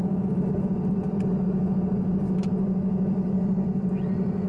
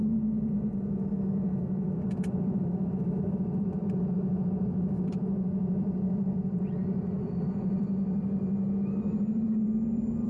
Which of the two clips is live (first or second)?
first